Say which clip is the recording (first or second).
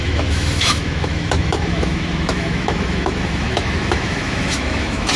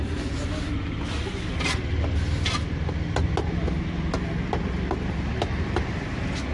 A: second